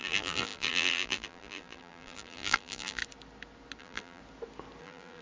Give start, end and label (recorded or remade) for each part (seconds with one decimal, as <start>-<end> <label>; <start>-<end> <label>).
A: 0.0-3.0 remade; 3.0-3.8 recorded; 3.8-4.2 remade; 4.2-4.8 recorded; 4.8-5.2 remade